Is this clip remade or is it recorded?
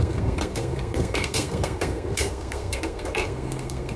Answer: remade